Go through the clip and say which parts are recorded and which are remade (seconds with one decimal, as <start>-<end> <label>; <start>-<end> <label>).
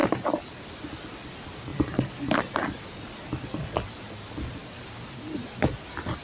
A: 0.0-0.6 remade; 0.6-1.7 recorded; 1.7-2.4 remade; 2.4-4.6 recorded; 4.6-5.2 remade; 5.2-6.2 recorded